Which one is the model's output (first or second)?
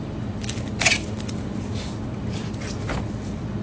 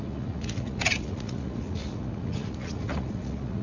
second